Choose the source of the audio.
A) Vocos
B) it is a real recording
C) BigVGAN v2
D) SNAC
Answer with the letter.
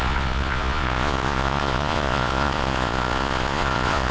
A